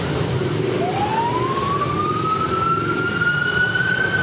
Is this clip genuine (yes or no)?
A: yes